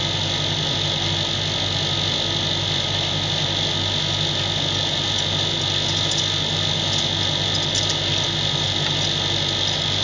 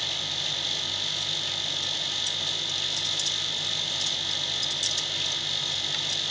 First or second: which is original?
first